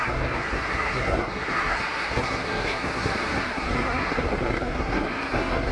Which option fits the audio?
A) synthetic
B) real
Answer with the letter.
A